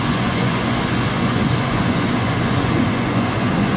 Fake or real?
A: fake